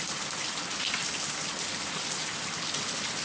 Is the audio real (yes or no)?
yes